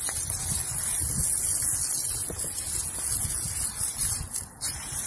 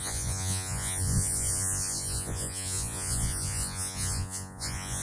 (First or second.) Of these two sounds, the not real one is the second